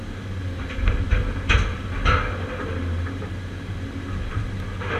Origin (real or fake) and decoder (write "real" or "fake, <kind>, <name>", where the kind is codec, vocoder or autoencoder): real